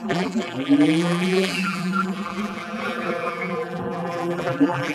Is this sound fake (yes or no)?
yes